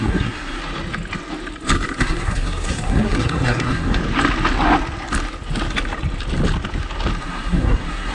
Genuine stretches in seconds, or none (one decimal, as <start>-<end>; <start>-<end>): 0.6-2.0; 4.0-7.2